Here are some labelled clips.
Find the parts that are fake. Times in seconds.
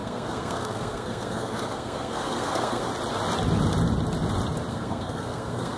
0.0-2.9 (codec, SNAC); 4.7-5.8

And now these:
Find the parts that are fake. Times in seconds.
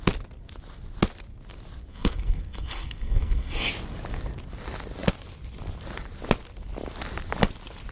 1.9-3.7 (codec, SNAC)